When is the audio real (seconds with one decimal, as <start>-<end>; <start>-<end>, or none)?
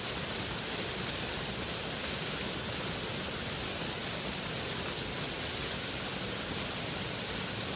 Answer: 0.0-7.8